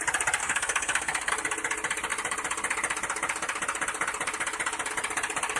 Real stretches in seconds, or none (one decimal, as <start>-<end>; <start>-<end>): 0.0-0.4; 1.3-5.6